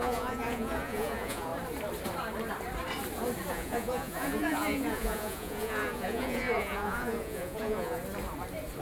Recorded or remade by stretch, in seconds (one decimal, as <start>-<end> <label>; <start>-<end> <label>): 0.0-1.5 remade; 1.5-3.5 recorded; 3.5-8.0 remade; 8.0-8.8 recorded